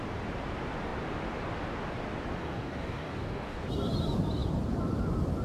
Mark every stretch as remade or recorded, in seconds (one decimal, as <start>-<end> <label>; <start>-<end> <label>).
0.0-2.4 recorded; 2.4-3.6 remade; 3.6-5.4 recorded